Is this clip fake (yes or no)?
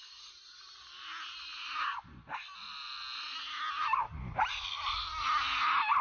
no